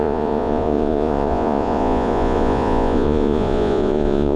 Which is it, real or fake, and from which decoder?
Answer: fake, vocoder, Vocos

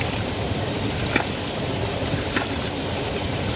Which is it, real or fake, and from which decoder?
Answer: fake, vocoder, BigVGAN v2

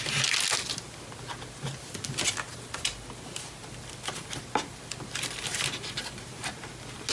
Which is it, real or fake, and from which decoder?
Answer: real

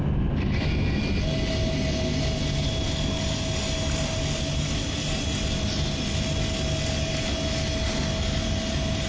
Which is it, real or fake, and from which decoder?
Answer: real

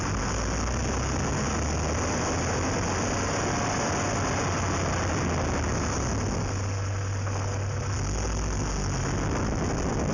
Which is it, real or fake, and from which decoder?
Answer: real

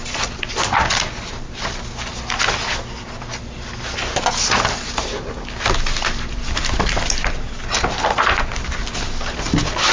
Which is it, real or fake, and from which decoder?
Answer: real